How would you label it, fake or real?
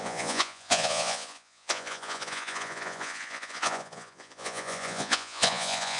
fake